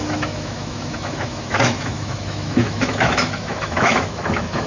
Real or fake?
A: fake